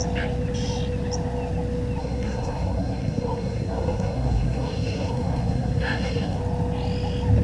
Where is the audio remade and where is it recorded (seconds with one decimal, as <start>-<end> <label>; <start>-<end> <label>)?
0.0-2.0 recorded; 2.0-6.4 remade; 6.4-7.4 recorded